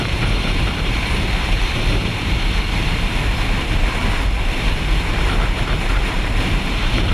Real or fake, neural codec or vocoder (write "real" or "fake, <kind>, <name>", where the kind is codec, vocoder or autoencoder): fake, vocoder, BigVGAN v2